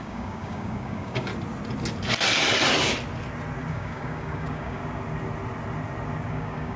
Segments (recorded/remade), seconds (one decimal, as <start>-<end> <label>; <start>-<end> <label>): 0.0-1.3 remade; 1.3-3.7 recorded; 3.7-4.8 remade; 4.8-6.3 recorded; 6.3-6.8 remade